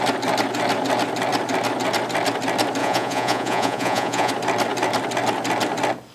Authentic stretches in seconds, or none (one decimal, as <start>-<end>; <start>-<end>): 0.0-2.8; 4.3-6.1